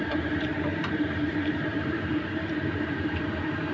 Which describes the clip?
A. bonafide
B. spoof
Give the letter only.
B